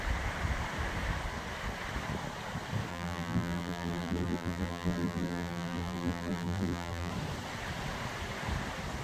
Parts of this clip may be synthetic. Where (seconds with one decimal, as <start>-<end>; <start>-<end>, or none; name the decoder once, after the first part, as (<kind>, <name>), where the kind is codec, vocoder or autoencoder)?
2.9-7.1 (vocoder, BigVGAN v2)